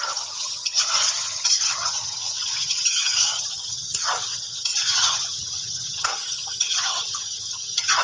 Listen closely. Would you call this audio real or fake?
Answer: fake